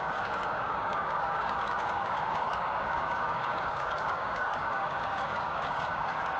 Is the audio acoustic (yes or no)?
no